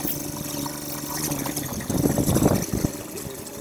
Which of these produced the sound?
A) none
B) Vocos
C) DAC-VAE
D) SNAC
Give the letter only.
A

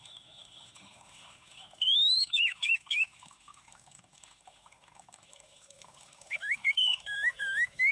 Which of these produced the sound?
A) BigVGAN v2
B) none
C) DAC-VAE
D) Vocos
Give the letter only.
C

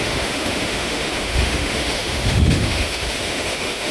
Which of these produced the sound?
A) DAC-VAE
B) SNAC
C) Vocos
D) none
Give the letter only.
A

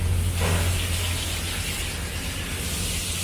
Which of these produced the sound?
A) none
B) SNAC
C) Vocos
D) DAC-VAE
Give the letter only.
A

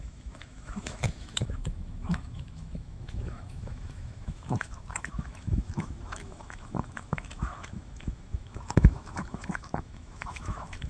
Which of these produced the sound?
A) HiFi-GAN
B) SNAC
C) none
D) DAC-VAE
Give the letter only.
D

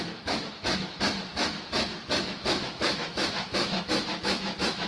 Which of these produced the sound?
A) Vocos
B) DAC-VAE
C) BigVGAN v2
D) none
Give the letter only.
B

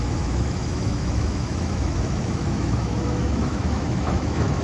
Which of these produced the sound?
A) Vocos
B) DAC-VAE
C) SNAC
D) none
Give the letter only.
B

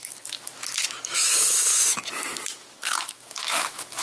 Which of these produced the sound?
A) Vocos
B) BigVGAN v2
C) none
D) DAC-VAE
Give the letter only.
D